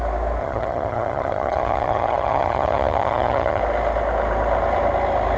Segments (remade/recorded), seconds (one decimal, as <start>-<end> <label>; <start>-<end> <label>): 0.0-0.4 recorded; 0.4-3.6 remade; 3.6-5.4 recorded